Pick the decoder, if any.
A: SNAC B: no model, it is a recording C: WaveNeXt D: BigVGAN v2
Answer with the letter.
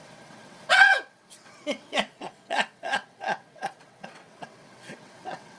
C